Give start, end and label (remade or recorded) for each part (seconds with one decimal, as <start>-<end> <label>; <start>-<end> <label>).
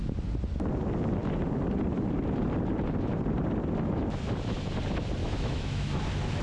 0.0-5.2 recorded; 5.2-6.0 remade; 6.0-6.4 recorded